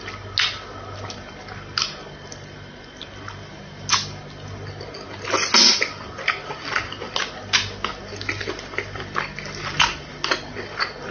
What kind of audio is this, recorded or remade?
recorded